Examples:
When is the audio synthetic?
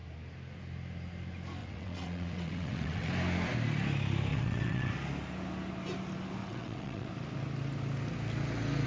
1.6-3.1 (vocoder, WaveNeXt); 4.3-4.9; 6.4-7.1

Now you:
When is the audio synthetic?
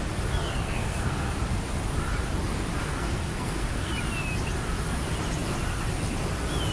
0.4-1.3 (codec, SNAC); 2.8-3.9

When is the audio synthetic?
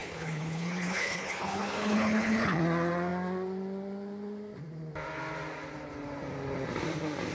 0.0-2.6 (codec, HILCodec)